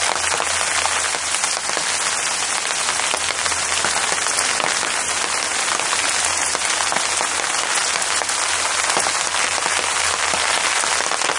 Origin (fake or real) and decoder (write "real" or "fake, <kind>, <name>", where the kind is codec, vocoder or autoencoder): real